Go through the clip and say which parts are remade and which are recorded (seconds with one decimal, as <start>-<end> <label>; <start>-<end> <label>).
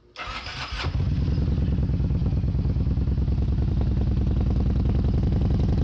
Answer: 0.0-5.8 recorded